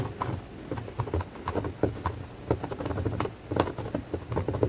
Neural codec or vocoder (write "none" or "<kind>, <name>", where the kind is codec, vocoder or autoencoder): none